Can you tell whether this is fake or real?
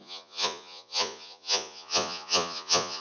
fake